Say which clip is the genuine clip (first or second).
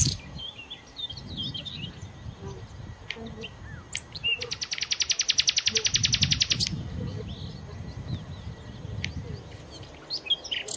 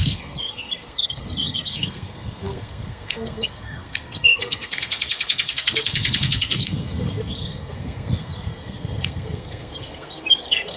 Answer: first